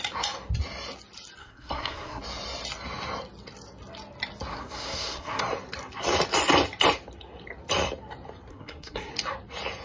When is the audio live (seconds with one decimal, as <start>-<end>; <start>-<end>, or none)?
0.0-1.4; 2.2-4.5; 5.4-8.5; 9.1-9.8